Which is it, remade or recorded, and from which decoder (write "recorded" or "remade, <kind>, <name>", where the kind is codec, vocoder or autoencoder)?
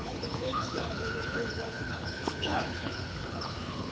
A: remade, codec, HILCodec